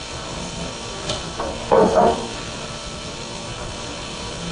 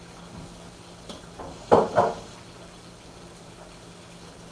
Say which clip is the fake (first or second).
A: first